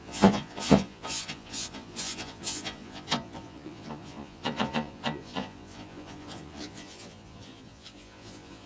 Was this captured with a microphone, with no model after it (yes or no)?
no